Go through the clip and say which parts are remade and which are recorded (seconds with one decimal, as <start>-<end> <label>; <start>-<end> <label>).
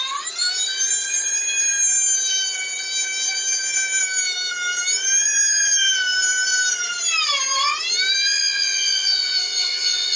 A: 0.0-8.3 recorded; 8.3-10.2 remade